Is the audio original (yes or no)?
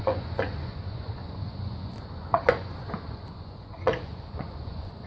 no